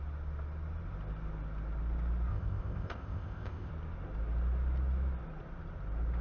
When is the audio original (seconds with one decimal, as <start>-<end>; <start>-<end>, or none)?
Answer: 0.0-2.3; 3.7-6.2